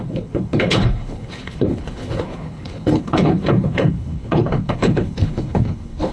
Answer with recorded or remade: remade